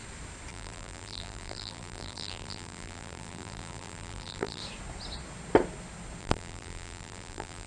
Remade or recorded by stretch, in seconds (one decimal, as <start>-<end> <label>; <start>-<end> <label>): 0.0-0.5 recorded; 0.5-4.6 remade; 4.6-6.2 recorded; 6.2-7.7 remade